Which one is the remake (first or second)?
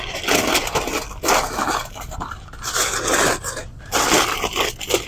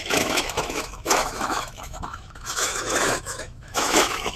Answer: second